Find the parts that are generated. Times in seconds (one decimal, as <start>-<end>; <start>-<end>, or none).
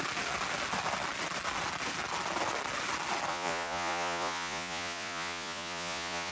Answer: 3.3-6.3